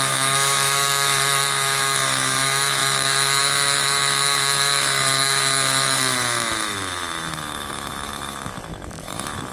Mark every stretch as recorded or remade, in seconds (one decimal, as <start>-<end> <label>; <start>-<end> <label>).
0.0-9.5 remade